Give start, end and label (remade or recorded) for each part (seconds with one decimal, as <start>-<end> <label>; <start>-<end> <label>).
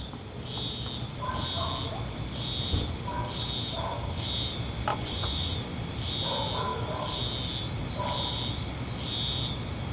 0.0-4.9 recorded; 4.9-5.5 remade; 5.5-9.9 recorded